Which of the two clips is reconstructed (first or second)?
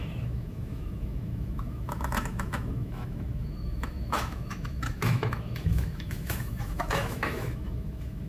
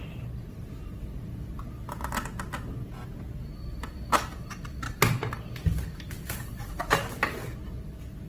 first